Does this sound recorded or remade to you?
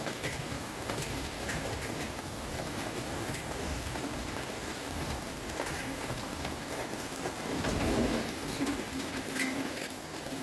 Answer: remade